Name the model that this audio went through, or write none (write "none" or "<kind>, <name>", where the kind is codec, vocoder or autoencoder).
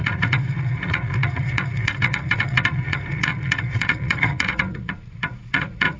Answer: vocoder, Vocos